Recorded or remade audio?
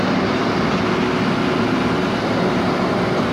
recorded